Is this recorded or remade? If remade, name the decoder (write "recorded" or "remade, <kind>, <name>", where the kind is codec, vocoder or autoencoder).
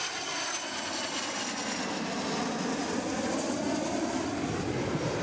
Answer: recorded